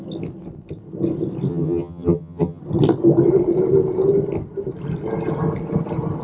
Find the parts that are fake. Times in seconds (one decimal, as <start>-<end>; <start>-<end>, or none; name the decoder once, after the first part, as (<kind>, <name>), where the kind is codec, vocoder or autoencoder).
1.5-2.6 (vocoder, HiFi-GAN)